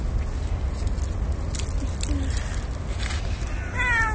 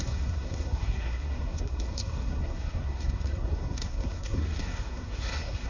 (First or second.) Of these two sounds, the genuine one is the first